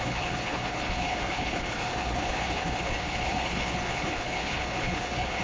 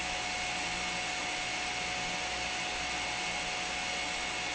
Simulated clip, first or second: first